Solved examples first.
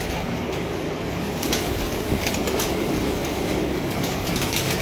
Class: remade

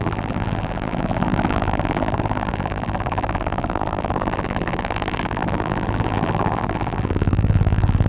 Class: remade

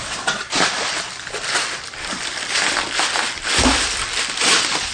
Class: remade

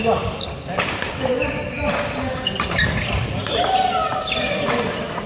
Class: recorded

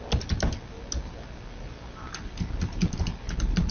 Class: recorded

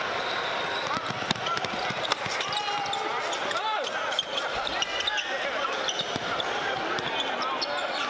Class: recorded